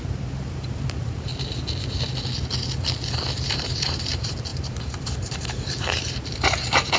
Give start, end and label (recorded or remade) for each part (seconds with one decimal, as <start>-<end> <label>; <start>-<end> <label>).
0.0-1.3 remade; 1.3-3.4 recorded; 3.4-7.0 remade